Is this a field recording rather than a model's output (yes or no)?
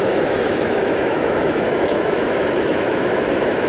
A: no